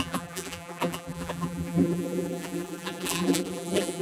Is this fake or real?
fake